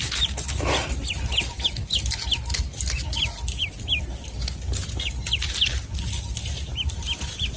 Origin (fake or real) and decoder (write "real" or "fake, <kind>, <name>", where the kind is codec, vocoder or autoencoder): real